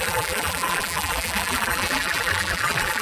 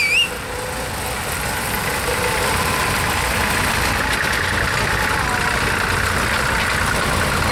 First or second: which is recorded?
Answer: second